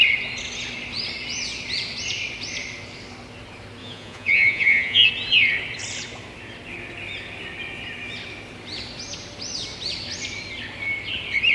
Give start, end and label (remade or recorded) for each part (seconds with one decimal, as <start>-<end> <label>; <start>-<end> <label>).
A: 0.0-3.8 recorded; 3.8-5.1 remade; 5.1-11.5 recorded